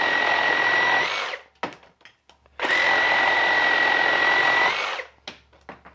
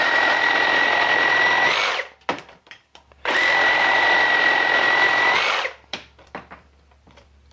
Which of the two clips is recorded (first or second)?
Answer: first